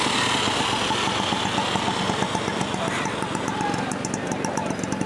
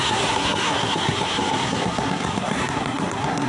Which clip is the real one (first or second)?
first